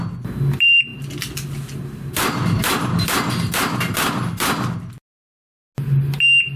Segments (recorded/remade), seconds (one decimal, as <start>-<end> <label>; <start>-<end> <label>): 0.0-6.6 recorded